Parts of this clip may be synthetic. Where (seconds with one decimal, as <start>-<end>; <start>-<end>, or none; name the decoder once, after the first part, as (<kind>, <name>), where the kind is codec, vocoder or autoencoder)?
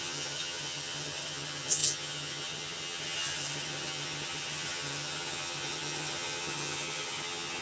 0.0-7.6 (vocoder, HiFi-GAN)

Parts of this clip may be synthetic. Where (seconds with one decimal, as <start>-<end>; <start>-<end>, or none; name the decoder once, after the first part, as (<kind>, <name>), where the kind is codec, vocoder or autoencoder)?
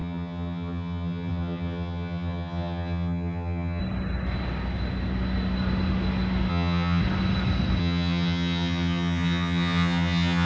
0.0-3.8 (vocoder, HiFi-GAN); 6.5-7.0; 7.8-10.5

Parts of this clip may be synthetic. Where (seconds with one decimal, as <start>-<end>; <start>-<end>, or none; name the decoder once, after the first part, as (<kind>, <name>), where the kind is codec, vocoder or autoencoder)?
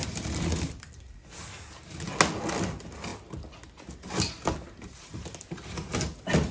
none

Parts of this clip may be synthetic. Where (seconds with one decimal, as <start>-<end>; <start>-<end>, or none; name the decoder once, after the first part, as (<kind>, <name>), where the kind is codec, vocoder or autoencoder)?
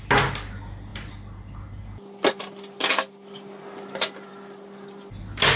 none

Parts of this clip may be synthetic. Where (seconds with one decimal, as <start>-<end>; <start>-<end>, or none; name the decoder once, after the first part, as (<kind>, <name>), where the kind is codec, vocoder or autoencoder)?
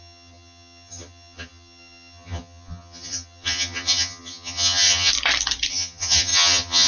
0.0-5.1 (vocoder, HiFi-GAN); 5.7-6.9